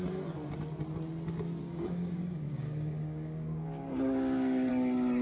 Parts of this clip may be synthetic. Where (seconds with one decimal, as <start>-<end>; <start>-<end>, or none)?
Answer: 1.6-4.7